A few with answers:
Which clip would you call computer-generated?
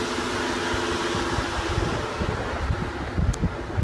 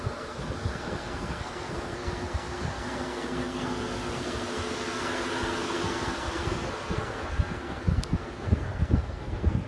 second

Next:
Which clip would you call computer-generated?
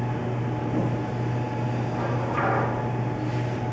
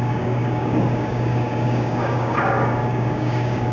second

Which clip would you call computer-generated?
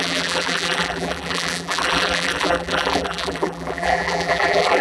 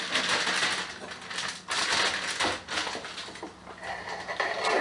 first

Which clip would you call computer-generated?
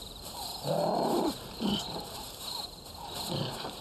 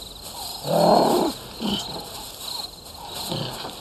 first